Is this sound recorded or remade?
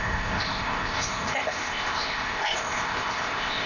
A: remade